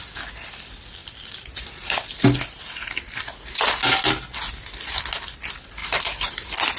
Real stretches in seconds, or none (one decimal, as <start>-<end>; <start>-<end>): 0.0-1.0; 2.1-6.8